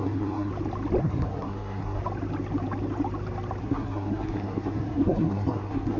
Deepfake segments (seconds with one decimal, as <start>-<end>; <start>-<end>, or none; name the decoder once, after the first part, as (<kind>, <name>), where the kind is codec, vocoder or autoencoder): 0.0-0.5 (codec, SNAC); 1.0-2.0; 3.6-6.0